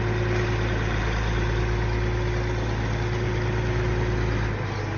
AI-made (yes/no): no